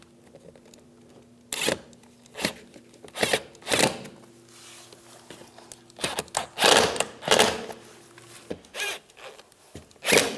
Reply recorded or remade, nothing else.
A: recorded